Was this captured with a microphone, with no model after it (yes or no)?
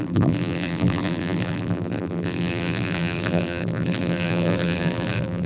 no